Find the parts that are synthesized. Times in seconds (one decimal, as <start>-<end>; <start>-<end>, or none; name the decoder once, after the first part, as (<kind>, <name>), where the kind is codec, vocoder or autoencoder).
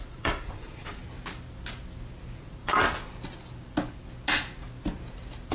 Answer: 0.0-1.0 (vocoder, Vocos); 2.4-2.8